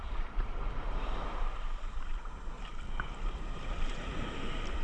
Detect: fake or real fake